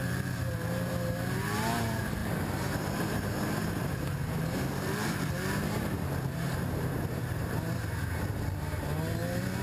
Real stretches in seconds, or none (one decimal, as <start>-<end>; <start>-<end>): none